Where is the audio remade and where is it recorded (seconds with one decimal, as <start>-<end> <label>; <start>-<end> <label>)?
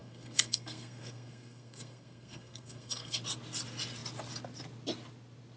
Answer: 0.0-3.2 remade; 3.2-5.6 recorded